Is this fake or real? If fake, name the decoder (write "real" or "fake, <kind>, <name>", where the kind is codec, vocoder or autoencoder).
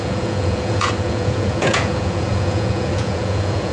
fake, vocoder, Vocos